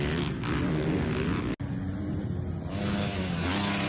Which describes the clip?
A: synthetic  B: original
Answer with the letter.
B